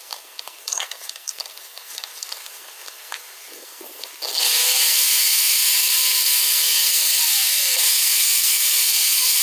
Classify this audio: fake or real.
fake